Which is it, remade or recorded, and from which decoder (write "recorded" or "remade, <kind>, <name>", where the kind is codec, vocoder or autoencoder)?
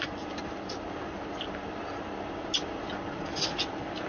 recorded